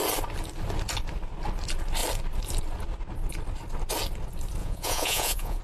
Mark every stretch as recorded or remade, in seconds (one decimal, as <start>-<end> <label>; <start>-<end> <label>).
0.0-4.6 recorded; 4.6-5.6 remade